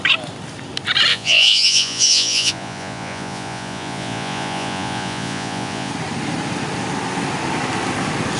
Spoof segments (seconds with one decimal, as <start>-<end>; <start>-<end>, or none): 1.1-5.9